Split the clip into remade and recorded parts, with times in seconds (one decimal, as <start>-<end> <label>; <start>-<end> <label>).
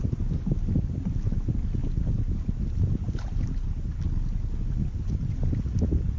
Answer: 0.0-6.2 recorded